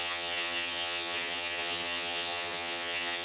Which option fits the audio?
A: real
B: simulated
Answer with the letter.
B